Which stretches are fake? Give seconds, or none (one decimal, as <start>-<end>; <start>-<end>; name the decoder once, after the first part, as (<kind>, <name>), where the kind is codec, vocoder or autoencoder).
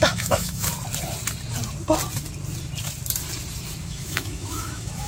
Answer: 0.0-0.7 (autoencoder, DAC-VAE); 3.8-5.1